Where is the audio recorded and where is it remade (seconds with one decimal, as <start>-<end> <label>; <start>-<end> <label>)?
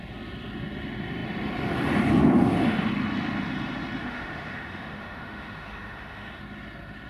0.0-4.0 recorded; 4.0-6.4 remade; 6.4-7.1 recorded